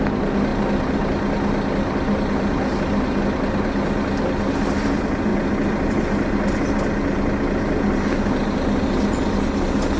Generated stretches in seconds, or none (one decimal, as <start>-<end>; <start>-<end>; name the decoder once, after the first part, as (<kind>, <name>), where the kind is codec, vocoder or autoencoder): none